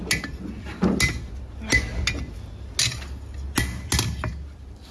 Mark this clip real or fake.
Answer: real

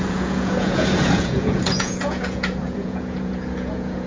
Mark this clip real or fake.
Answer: fake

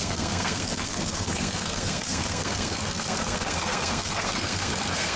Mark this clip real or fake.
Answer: fake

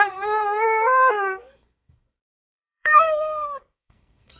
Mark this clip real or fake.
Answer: fake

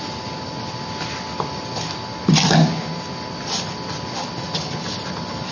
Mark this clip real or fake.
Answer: real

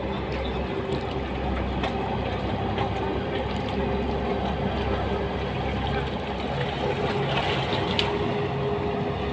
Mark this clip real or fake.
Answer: real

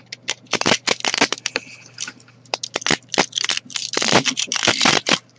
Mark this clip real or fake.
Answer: real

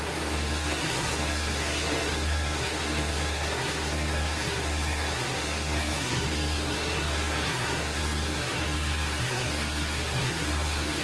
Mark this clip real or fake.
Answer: fake